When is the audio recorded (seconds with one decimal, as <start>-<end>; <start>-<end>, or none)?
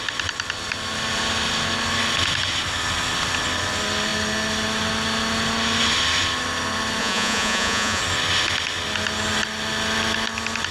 0.0-7.0; 8.0-10.7